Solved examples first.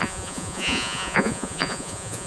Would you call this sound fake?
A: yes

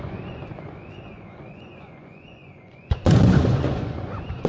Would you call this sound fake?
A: yes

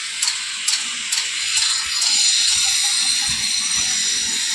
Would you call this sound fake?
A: yes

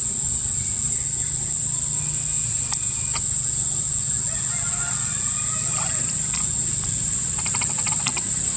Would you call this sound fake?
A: no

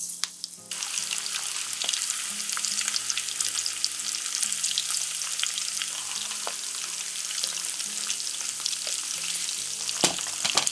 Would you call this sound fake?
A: no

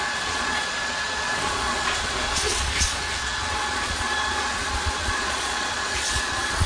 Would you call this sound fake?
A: yes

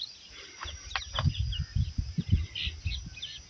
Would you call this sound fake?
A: no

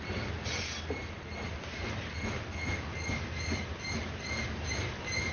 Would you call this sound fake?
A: no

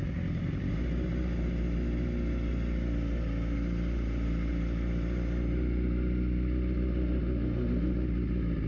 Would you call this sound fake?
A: no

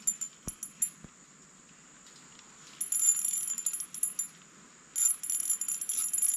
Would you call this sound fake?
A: no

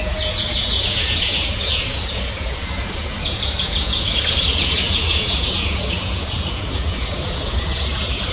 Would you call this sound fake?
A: yes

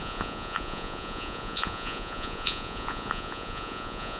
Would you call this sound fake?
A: yes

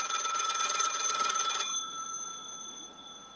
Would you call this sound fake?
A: yes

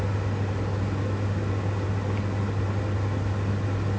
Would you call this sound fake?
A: no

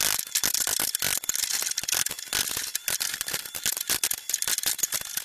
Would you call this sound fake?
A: no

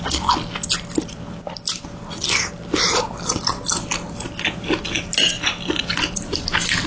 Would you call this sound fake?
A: no